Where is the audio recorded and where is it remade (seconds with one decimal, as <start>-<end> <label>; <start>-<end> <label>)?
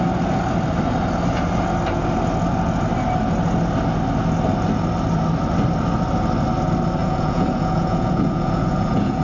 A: 0.0-7.0 recorded; 7.0-9.2 remade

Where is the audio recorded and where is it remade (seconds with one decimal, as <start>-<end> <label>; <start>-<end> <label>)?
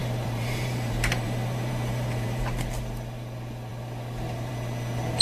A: 0.0-2.8 remade; 2.8-5.2 recorded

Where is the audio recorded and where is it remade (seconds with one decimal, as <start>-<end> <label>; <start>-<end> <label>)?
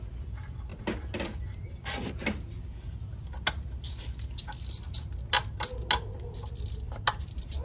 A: 0.0-7.6 recorded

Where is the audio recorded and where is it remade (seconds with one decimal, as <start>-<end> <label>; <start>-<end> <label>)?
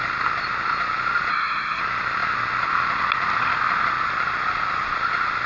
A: 0.0-1.3 recorded; 1.3-1.8 remade; 1.8-5.5 recorded